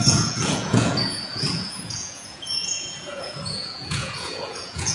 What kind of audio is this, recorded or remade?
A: remade